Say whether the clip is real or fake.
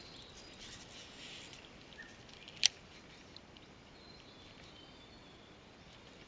real